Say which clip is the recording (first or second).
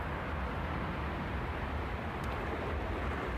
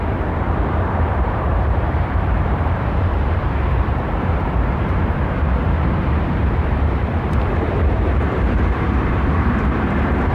first